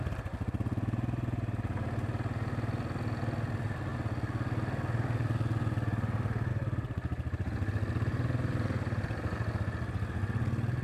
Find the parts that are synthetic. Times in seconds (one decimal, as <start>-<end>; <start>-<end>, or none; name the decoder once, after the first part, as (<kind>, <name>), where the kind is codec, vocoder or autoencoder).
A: 8.1-9.6 (vocoder, BigVGAN v2)